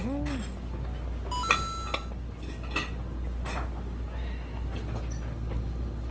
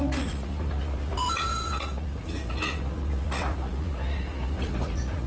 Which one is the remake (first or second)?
second